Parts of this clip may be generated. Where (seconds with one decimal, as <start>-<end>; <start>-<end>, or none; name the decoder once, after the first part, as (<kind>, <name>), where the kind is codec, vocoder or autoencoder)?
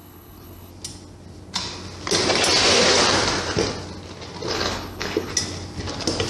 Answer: 0.0-0.7 (codec, HILCodec); 4.5-5.3